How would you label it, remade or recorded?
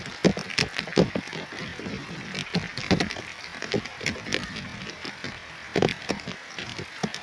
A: recorded